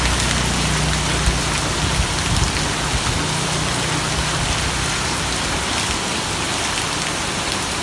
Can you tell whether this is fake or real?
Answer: real